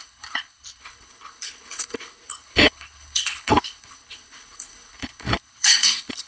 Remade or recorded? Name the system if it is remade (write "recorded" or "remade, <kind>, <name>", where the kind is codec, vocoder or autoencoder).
remade, codec, HILCodec